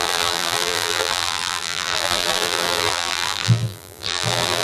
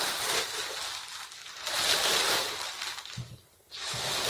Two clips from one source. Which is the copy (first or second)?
first